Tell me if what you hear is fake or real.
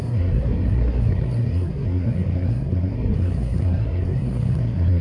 fake